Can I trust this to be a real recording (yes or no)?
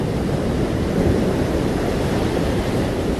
no